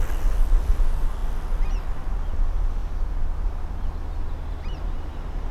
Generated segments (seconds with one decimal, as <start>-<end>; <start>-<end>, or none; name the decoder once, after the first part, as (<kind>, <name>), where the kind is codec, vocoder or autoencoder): none